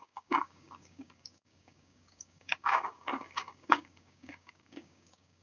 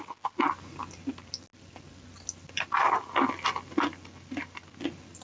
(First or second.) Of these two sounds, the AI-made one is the first